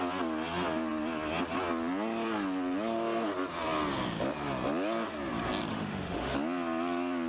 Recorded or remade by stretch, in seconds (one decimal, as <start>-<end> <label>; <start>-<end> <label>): 0.0-5.7 recorded; 5.7-6.3 remade; 6.3-7.3 recorded